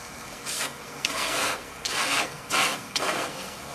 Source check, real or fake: fake